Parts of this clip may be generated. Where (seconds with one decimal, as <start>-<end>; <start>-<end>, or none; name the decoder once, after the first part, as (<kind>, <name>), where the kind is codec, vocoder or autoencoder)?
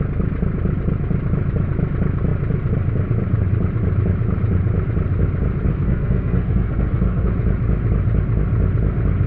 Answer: 5.7-7.3 (codec, SNAC)